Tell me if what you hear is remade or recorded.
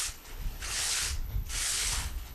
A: remade